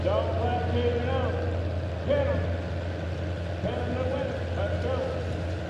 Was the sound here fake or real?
real